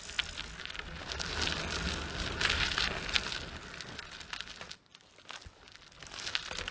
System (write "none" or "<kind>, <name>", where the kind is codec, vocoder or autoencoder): none